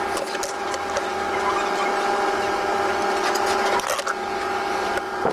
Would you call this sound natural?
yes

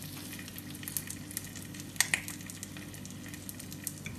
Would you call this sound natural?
yes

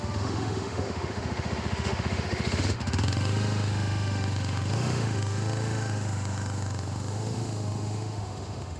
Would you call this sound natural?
no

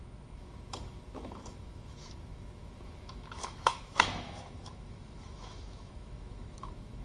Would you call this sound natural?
no